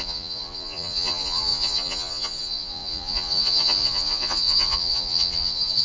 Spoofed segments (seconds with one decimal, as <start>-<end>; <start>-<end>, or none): 0.0-5.8